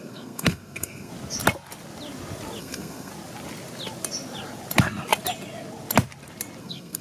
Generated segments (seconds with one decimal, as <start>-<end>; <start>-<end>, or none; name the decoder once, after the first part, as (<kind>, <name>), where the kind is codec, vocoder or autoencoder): 0.0-1.1 (codec, SNAC); 2.6-3.1; 6.6-7.0